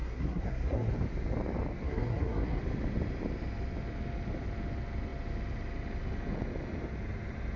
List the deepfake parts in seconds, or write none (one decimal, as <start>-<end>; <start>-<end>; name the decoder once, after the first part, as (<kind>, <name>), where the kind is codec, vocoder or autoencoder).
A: 0.0-0.9 (codec, SNAC); 1.8-2.6

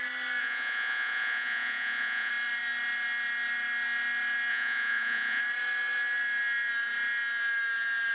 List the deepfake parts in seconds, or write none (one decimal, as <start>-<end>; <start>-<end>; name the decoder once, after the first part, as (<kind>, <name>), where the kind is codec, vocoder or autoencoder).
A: 0.4-2.3 (vocoder, Vocos); 4.5-5.4